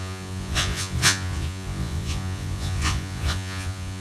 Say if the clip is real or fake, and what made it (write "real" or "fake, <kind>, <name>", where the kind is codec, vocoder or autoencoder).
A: fake, vocoder, Vocos